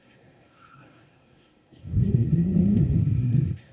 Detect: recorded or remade remade